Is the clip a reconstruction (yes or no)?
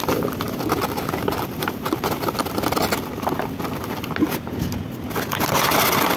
no